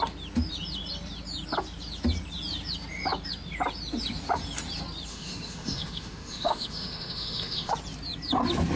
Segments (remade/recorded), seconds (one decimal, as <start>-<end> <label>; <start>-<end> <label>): 0.0-5.1 recorded; 5.1-7.7 remade; 7.7-8.8 recorded